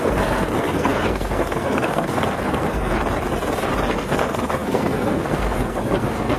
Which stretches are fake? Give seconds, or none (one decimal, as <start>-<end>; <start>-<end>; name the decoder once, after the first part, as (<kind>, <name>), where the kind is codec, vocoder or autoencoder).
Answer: 0.0-2.9 (codec, SNAC); 3.9-6.4